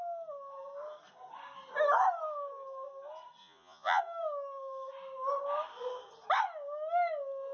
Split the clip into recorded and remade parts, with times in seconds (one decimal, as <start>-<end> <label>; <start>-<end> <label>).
0.0-3.4 recorded; 3.4-4.0 remade; 4.0-7.5 recorded